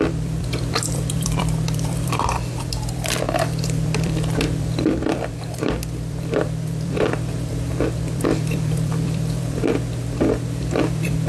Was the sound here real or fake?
fake